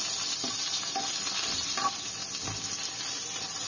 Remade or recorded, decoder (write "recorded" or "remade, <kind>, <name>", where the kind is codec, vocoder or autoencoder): recorded